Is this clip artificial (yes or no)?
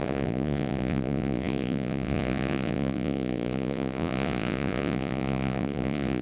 yes